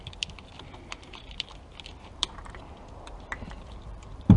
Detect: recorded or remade remade